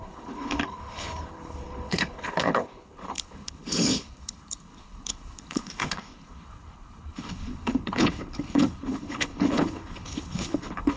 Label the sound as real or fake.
fake